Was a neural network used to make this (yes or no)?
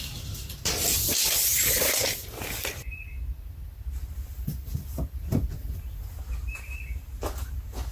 no